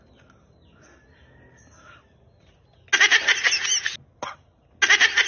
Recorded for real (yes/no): yes